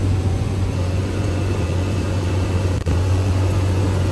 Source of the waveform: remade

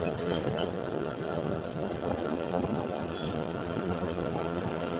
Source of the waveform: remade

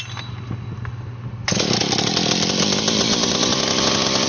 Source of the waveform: recorded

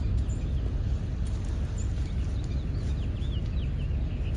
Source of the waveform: recorded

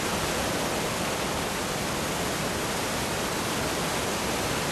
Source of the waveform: recorded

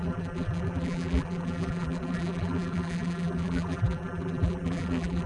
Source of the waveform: remade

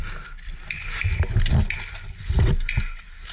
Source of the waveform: recorded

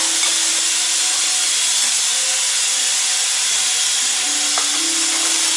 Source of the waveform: recorded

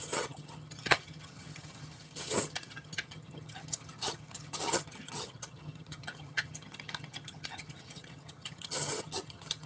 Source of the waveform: remade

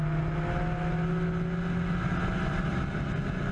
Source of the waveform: recorded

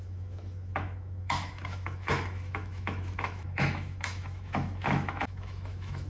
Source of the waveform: remade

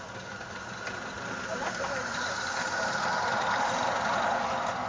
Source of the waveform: recorded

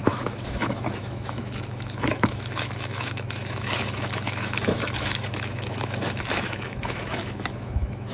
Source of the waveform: remade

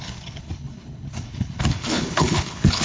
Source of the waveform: remade